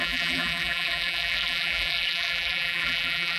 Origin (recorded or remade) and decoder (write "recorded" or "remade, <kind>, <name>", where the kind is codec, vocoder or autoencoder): remade, vocoder, BigVGAN v2